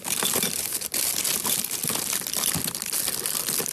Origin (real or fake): real